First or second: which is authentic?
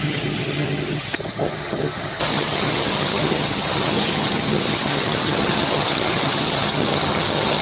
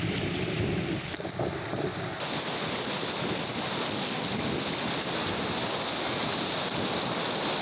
second